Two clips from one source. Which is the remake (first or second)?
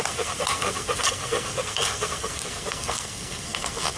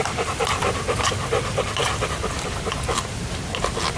first